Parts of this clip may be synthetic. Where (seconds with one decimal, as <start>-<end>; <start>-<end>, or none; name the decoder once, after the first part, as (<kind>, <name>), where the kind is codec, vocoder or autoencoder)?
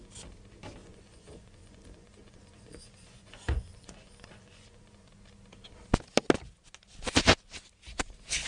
0.8-5.1 (vocoder, Vocos)